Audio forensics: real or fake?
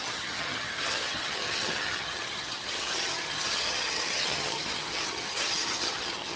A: fake